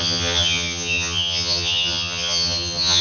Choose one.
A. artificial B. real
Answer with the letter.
A